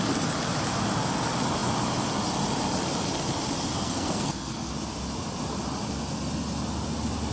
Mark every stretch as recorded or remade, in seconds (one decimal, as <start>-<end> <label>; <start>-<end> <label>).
0.0-3.7 recorded; 3.7-4.7 remade; 4.7-7.3 recorded

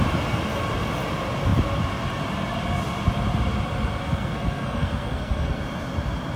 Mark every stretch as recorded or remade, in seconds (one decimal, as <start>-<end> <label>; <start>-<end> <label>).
0.0-4.0 recorded; 4.0-5.6 remade; 5.6-6.4 recorded